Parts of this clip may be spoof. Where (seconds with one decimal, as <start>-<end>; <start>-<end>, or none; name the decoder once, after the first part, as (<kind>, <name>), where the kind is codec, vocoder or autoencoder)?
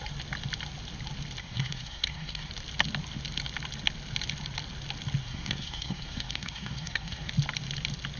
1.4-2.5 (codec, SNAC); 5.2-7.3